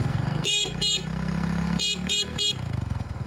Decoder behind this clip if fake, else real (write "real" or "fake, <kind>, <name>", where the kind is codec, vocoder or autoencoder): fake, codec, SNAC